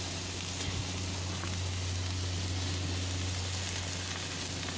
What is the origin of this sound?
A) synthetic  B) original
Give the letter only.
B